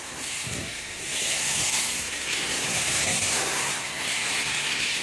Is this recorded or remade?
remade